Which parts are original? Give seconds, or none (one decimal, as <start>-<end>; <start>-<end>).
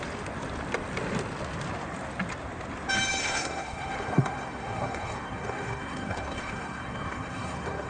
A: 0.0-3.2